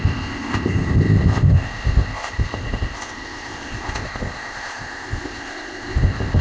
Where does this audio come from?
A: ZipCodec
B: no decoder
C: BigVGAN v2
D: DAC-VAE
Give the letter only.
A